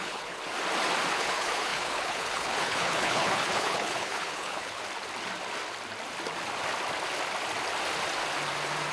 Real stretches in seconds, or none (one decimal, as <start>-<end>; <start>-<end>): 0.4-1.1; 4.8-8.9

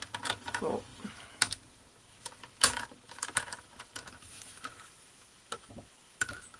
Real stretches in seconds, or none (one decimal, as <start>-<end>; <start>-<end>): none

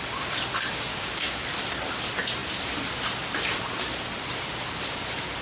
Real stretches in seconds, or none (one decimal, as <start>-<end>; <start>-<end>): 0.0-0.9; 1.4-5.4